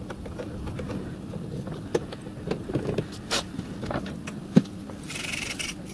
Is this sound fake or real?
real